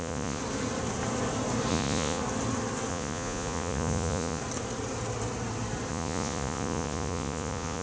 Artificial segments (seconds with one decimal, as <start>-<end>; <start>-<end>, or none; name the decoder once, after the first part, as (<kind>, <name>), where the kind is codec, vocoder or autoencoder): 0.0-0.4 (vocoder, Vocos); 1.7-2.2; 2.9-4.4; 5.9-7.8